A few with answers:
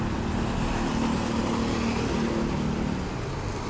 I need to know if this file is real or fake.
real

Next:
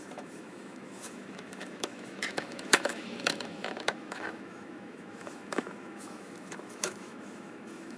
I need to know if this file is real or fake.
fake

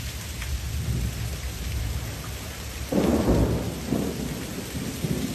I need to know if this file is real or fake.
real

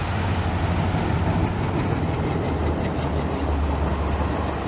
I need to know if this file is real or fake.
real